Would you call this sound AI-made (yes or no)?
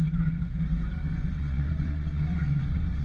yes